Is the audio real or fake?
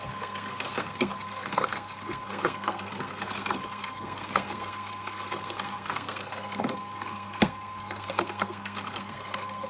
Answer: fake